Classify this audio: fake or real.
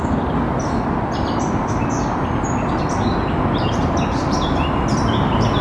real